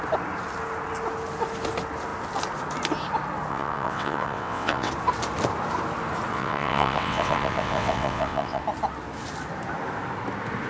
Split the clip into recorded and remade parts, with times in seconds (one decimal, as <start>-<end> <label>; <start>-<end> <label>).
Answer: 0.0-3.5 recorded; 3.5-4.9 remade; 4.9-6.3 recorded; 6.3-8.6 remade; 8.6-10.7 recorded